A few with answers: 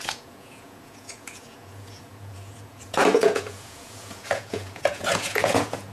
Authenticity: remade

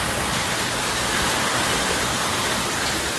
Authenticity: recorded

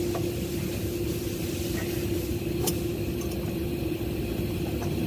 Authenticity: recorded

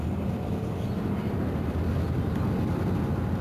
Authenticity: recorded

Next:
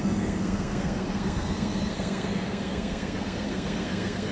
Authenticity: remade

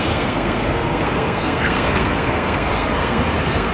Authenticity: remade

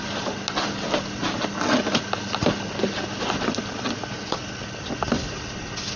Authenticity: recorded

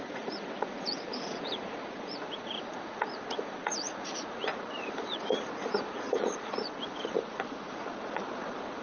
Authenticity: remade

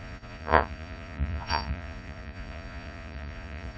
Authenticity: remade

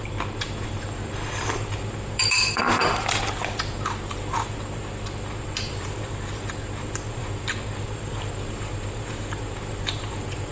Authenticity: remade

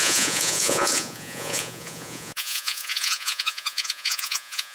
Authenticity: remade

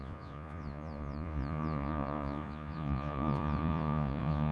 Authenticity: remade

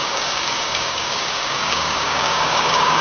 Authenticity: remade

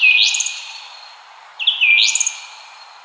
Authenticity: recorded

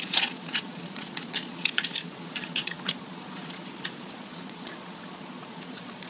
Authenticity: remade